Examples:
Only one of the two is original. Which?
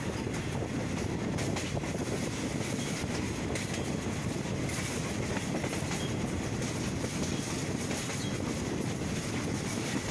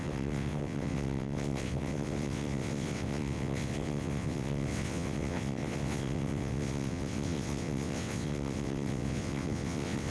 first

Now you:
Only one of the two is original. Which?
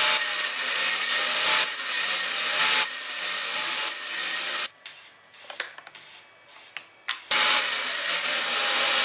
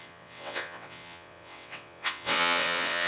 first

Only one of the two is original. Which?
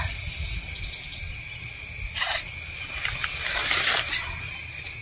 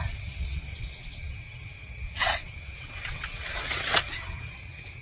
first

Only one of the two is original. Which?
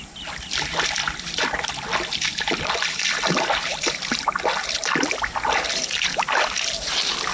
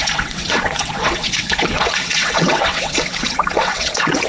first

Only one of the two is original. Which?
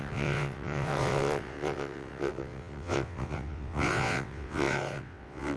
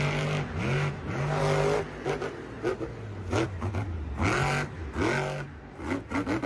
second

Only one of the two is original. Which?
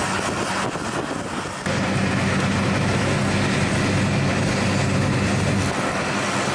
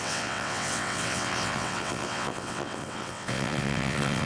first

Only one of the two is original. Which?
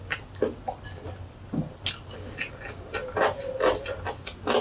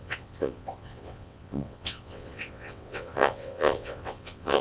first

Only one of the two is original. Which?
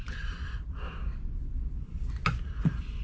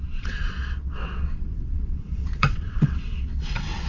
first